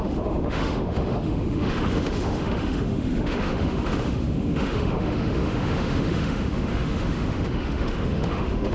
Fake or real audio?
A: fake